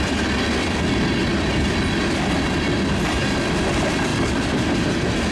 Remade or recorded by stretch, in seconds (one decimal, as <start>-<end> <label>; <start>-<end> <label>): 0.0-1.2 remade; 1.2-3.2 recorded; 3.2-5.3 remade